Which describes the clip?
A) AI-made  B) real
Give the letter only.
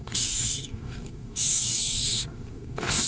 A